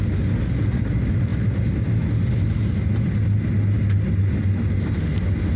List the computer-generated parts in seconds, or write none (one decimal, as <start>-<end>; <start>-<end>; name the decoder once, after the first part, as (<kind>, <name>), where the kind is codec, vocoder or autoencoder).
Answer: none